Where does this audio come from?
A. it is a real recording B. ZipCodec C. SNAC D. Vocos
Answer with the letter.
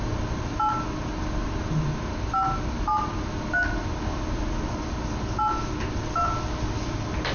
A